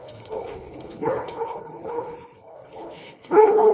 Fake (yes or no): yes